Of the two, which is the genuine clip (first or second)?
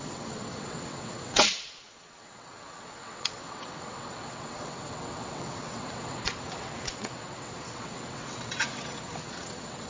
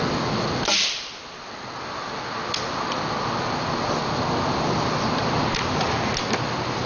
second